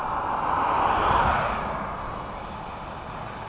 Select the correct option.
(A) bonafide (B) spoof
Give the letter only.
A